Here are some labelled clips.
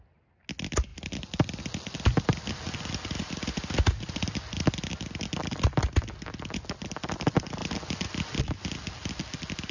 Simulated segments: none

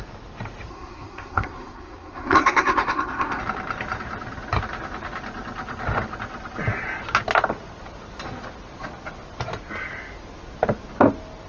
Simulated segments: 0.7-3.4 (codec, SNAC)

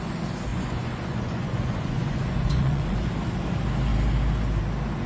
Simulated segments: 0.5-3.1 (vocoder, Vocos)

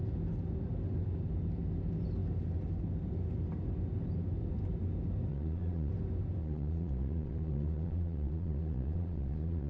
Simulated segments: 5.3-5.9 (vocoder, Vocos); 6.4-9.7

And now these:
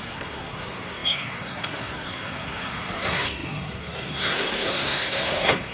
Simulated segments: 0.0-5.7 (codec, SNAC)

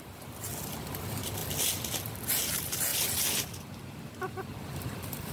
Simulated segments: 0.0-1.4 (vocoder, BigVGAN v2); 2.3-2.9; 4.2-5.3